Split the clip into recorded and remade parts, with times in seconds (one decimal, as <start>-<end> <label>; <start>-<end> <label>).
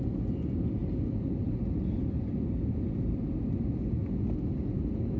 0.0-5.2 recorded